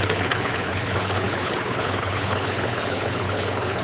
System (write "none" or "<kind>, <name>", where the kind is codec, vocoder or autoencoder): codec, HILCodec